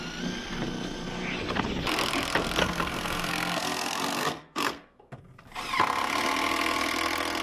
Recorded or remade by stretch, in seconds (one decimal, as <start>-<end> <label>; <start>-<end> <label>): 0.0-2.6 recorded; 2.6-5.2 remade; 5.2-7.4 recorded